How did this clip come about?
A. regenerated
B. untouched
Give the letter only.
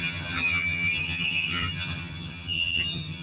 A